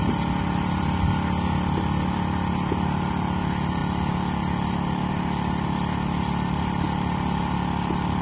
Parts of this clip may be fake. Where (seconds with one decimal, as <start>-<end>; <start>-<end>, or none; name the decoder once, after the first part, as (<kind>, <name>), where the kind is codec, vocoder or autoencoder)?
none